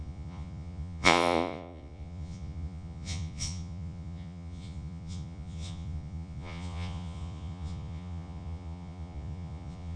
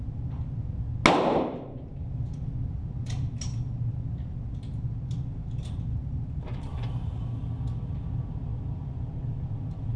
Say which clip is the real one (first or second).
second